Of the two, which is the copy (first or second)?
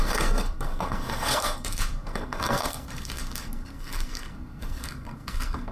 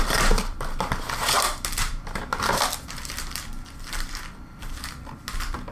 first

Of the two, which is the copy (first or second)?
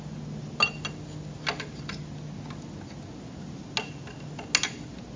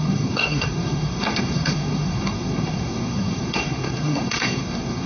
second